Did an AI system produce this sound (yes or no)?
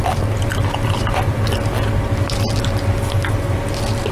no